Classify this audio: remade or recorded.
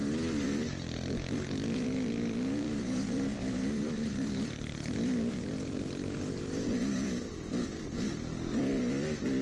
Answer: remade